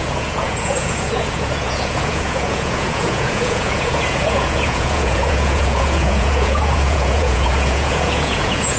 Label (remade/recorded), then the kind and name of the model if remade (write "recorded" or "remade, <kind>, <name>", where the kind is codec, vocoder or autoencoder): remade, vocoder, Vocos